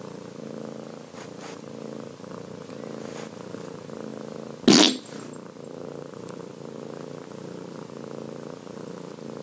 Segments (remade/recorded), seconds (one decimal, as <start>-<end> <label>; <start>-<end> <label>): 0.0-9.4 recorded